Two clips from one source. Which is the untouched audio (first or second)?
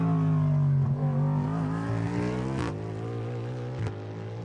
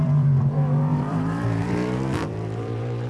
first